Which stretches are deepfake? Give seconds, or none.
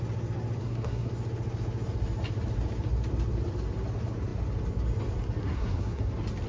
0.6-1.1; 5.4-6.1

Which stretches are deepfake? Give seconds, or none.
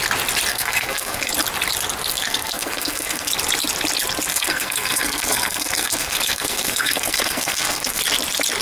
0.5-1.3; 2.1-3.3; 4.3-8.0